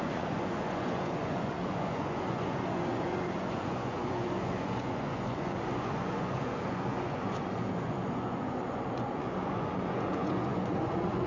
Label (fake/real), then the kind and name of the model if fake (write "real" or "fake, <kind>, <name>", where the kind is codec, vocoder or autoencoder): fake, vocoder, Vocos